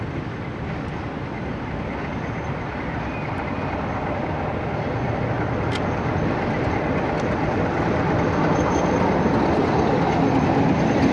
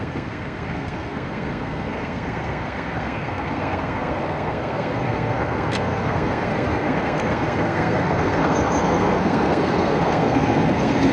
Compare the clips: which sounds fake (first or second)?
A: second